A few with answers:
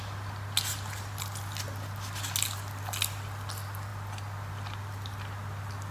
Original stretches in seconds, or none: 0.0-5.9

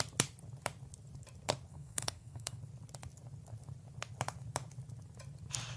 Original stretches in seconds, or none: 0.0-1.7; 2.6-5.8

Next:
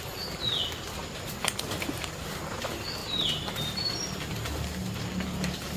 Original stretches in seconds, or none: 1.0-2.2; 3.0-4.0